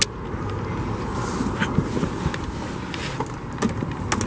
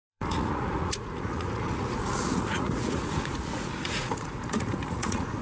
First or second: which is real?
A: first